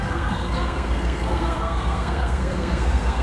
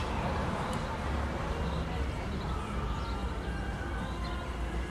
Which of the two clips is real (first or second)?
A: second